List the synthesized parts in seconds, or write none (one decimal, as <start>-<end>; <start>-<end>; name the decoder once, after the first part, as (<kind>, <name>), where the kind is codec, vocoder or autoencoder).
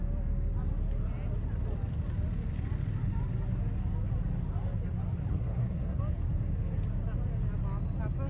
5.3-6.0 (codec, SNAC)